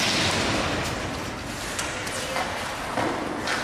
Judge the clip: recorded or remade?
recorded